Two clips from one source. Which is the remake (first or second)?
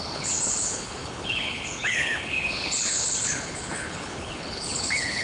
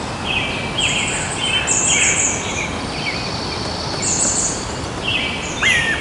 first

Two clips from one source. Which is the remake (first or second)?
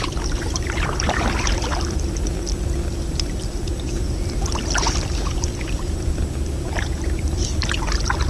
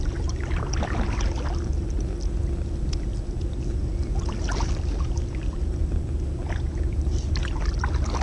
first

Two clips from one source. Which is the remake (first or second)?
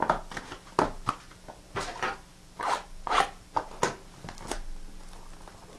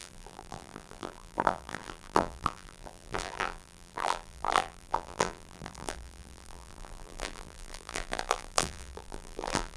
second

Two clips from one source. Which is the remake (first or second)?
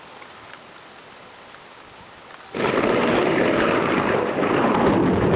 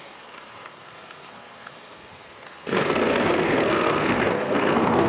second